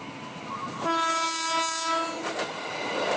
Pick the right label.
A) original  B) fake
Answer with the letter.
A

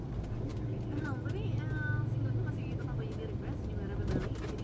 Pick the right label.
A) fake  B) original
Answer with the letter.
B